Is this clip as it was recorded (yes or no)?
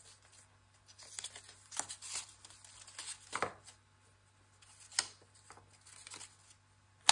yes